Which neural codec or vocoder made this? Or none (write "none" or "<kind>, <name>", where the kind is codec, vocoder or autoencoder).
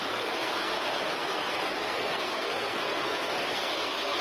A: codec, SNAC